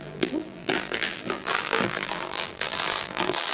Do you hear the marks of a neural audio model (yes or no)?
yes